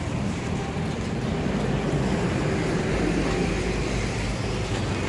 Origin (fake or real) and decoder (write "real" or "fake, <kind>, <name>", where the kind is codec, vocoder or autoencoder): real